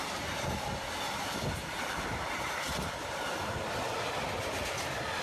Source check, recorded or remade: recorded